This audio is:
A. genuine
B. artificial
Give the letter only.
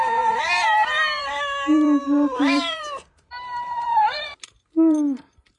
B